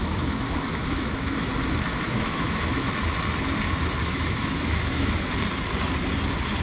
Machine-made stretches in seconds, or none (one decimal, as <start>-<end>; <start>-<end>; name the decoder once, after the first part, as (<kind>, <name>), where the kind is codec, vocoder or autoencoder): 0.0-1.5 (autoencoder, DAC-VAE); 1.9-2.9; 4.0-5.3